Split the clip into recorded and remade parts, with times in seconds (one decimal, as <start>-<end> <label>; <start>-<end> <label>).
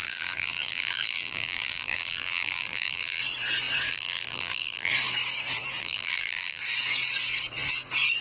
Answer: 0.0-3.2 remade; 3.2-3.9 recorded; 3.9-4.9 remade; 4.9-5.8 recorded; 5.8-6.6 remade; 6.6-8.2 recorded